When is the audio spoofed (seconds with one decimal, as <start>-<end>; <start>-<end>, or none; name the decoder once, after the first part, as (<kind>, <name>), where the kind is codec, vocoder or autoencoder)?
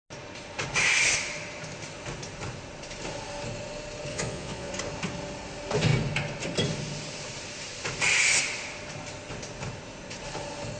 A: 4.1-4.7 (vocoder, Vocos)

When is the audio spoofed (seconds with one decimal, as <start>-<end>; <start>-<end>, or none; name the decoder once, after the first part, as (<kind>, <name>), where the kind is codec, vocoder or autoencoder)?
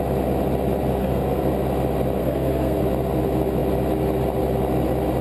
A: 1.0-1.5 (codec, SNAC); 2.2-2.8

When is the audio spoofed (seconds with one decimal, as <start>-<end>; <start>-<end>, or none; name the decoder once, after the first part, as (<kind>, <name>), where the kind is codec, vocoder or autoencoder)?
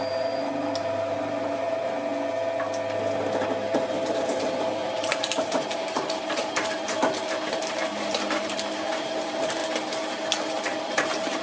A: 0.0-2.1 (vocoder, BigVGAN v2); 4.1-9.6; 10.8-11.4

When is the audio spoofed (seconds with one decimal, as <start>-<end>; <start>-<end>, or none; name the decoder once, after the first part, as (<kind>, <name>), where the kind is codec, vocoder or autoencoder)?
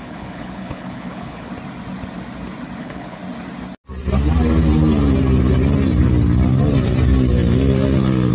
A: 0.0-1.5 (codec, HILCodec); 2.8-3.2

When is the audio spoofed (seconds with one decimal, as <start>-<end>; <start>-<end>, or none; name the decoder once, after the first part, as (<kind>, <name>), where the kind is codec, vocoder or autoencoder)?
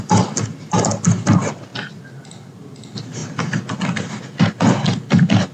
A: none